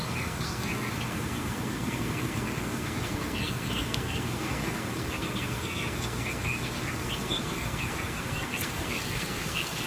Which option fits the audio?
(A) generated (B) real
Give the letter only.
A